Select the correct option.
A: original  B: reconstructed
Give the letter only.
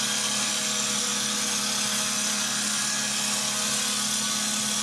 A